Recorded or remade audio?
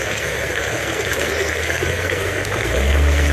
remade